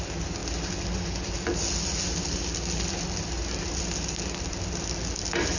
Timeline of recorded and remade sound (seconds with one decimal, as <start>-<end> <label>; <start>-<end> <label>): 0.0-5.6 recorded

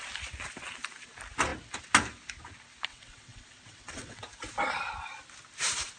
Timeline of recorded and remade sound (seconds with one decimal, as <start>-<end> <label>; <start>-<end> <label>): 0.0-2.9 recorded; 2.9-4.2 remade; 4.2-6.0 recorded

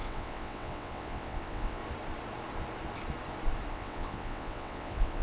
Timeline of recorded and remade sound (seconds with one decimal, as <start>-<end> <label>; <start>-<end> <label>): 0.0-1.8 remade; 1.8-3.7 recorded; 3.7-5.2 remade

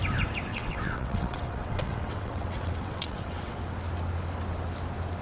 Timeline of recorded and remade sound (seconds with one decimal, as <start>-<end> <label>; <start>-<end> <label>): 0.0-0.5 recorded; 0.5-3.6 remade; 3.6-5.2 recorded

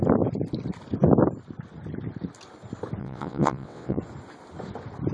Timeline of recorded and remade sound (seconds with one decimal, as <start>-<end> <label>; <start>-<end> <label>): 0.0-3.0 recorded; 3.0-4.0 remade; 4.0-5.1 recorded

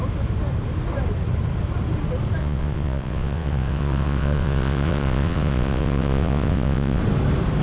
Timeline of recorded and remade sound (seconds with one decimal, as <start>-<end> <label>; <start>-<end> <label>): 0.0-2.4 recorded; 2.4-7.0 remade; 7.0-7.6 recorded